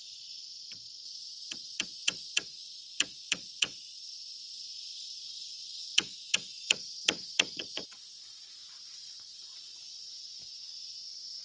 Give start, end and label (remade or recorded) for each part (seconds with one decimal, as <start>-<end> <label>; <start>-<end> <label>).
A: 0.0-10.2 remade; 10.2-11.4 recorded